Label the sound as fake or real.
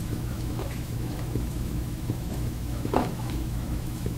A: fake